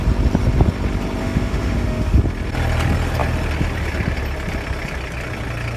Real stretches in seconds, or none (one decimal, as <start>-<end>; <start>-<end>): 0.0-1.2; 2.2-5.8